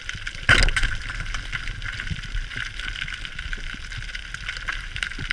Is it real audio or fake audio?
real